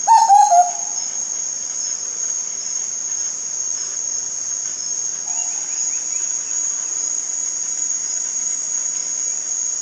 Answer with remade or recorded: recorded